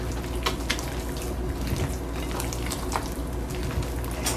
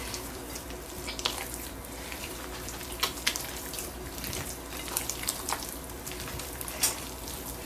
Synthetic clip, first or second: second